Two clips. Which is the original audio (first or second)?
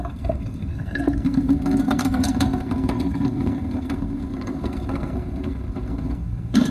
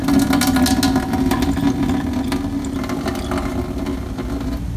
second